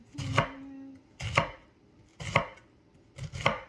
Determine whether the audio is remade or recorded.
recorded